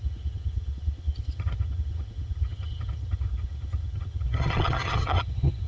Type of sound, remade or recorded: remade